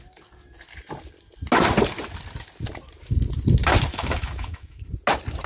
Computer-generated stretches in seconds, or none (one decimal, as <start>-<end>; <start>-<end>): 3.9-4.8